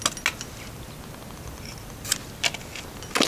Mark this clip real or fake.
real